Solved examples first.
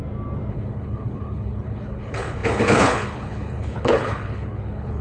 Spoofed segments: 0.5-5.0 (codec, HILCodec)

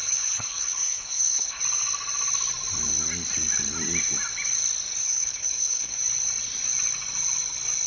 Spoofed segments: 0.0-1.6 (codec, HILCodec); 5.0-6.0

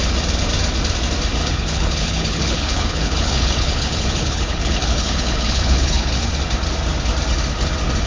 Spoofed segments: 1.4-6.3 (codec, HILCodec)